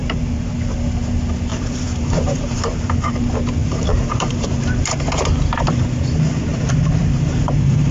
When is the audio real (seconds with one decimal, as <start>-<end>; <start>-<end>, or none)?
0.5-1.5; 3.2-3.6; 4.9-6.5

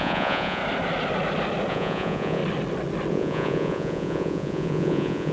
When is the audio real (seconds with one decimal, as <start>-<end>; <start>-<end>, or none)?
0.6-1.7; 2.4-3.1

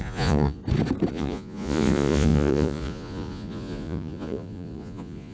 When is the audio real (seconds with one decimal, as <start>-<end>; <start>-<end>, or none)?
0.6-1.1